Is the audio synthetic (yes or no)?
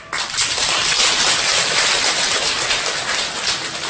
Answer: no